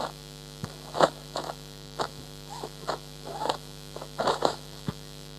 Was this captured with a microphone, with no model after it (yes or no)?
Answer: no